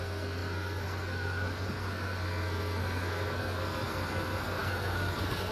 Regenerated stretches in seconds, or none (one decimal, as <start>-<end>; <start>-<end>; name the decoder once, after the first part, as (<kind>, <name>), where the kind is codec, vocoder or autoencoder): 0.0-5.5 (codec, SNAC)